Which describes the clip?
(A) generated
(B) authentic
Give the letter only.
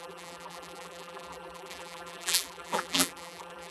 A